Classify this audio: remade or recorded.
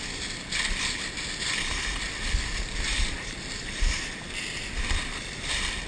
recorded